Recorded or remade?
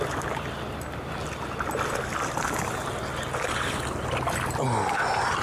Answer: recorded